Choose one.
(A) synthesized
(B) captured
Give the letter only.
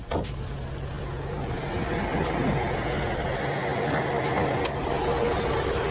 B